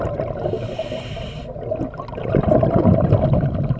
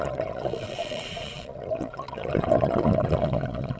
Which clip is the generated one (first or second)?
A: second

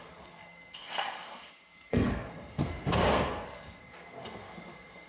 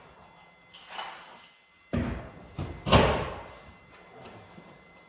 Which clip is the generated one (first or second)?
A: first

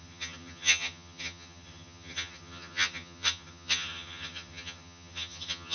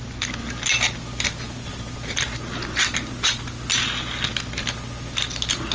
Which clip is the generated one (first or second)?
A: first